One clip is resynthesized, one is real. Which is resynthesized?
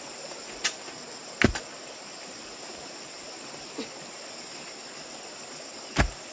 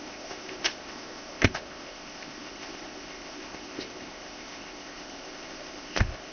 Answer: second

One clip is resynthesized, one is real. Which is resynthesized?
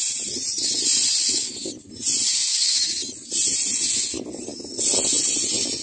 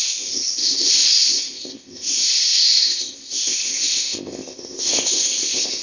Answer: second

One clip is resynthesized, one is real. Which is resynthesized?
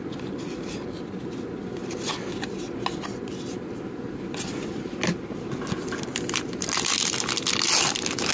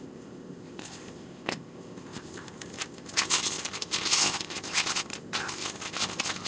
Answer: second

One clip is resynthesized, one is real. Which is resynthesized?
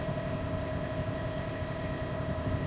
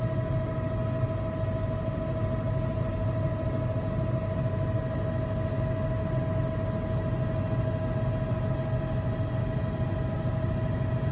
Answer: first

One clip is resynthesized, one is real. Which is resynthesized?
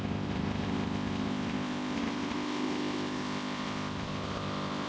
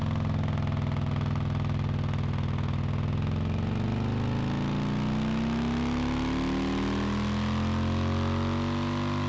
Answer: first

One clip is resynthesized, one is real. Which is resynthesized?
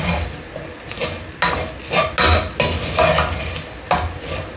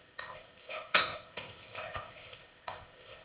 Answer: second